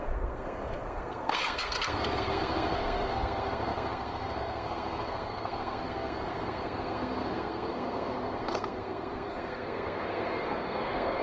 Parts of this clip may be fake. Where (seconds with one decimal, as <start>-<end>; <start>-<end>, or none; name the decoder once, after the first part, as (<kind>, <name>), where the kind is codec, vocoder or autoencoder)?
0.0-11.2 (codec, SNAC)